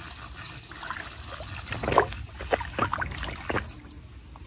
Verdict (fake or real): real